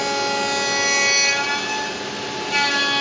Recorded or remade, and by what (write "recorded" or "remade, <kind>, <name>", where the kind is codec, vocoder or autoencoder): recorded